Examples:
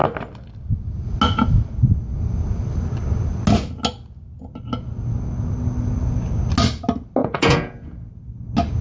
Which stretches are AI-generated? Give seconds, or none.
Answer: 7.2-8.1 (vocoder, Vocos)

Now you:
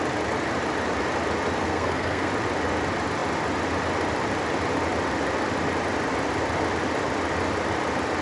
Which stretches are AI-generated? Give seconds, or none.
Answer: 1.6-2.3 (codec, SNAC)

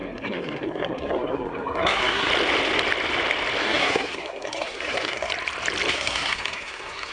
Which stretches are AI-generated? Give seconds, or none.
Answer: 0.0-2.3 (codec, SNAC); 3.6-5.3; 5.9-7.1